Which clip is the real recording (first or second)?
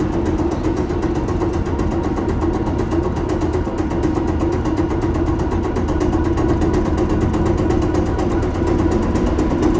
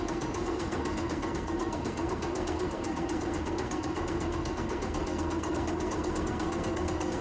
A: first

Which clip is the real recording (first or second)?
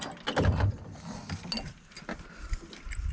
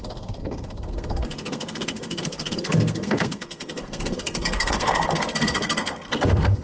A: first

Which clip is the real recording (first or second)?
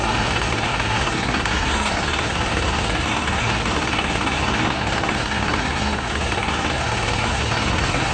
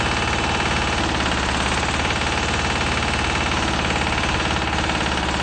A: second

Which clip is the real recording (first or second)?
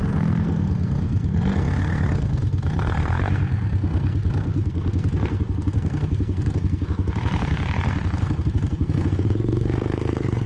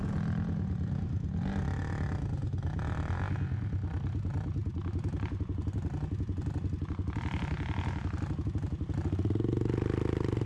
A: second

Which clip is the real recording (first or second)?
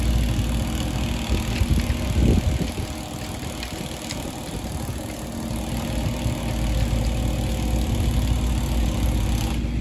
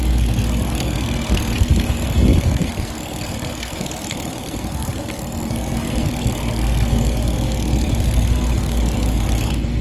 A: first